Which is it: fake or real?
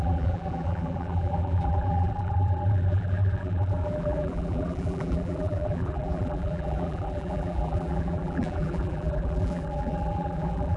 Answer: fake